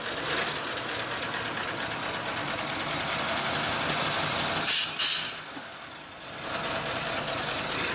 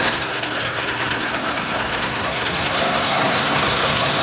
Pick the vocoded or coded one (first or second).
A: second